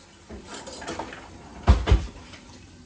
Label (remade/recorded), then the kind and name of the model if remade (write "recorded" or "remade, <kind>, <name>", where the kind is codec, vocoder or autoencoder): recorded